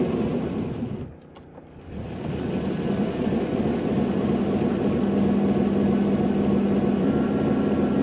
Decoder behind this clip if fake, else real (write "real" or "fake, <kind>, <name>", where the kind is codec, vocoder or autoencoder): real